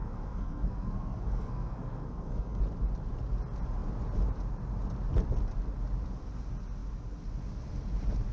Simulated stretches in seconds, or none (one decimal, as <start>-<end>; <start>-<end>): 0.0-2.6